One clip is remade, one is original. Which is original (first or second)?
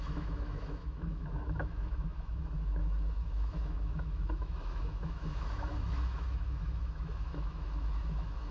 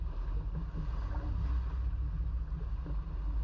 second